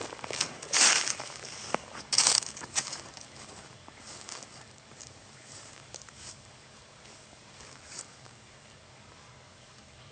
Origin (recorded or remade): remade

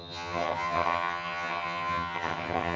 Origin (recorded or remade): remade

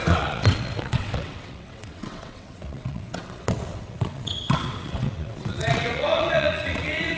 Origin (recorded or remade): remade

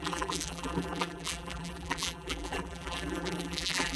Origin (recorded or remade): remade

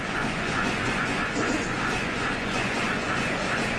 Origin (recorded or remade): remade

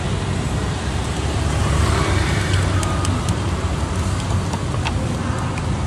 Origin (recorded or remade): recorded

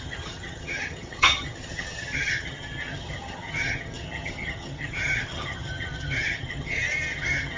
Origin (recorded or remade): remade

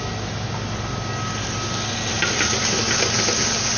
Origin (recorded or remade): recorded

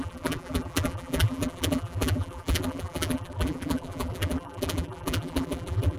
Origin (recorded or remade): remade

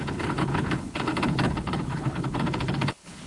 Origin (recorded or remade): remade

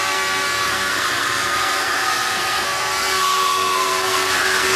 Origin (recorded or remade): remade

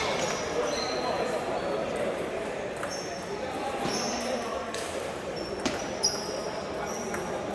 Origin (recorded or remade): recorded